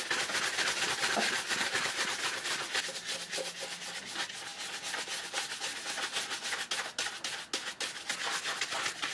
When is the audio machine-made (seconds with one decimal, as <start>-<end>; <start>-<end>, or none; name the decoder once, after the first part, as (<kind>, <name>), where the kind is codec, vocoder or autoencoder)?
none

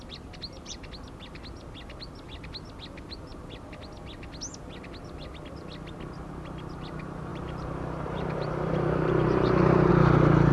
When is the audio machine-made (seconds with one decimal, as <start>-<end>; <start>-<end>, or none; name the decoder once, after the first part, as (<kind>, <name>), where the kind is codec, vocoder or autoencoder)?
7.3-9.9 (vocoder, BigVGAN v2)

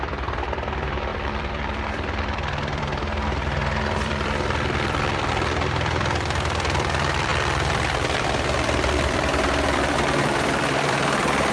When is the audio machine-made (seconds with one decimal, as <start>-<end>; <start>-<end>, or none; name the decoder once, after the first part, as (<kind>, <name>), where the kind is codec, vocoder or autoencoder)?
0.0-11.5 (vocoder, BigVGAN v2)